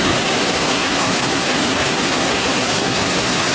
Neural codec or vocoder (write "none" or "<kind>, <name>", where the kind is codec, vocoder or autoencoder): codec, SNAC